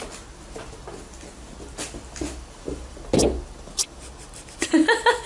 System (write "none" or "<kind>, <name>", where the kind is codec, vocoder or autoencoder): none